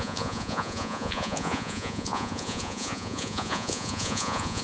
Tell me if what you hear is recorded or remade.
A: remade